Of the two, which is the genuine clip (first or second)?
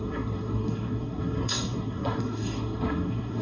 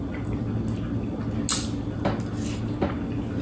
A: second